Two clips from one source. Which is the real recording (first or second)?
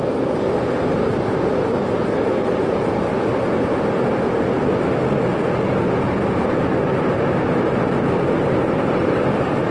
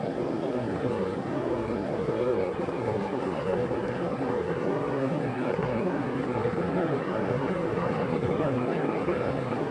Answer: first